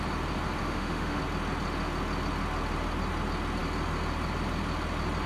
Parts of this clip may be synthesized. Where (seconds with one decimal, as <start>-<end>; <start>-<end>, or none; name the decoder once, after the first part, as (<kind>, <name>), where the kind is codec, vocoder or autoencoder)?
0.6-1.2 (autoencoder, DAC-VAE)